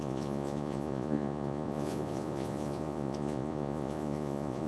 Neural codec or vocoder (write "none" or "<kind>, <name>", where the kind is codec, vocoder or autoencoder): vocoder, Vocos